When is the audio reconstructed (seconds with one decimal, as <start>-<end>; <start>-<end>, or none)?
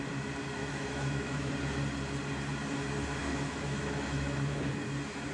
0.6-1.5; 3.2-4.7